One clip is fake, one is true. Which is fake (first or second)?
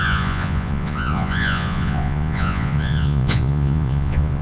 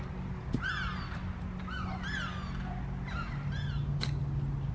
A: first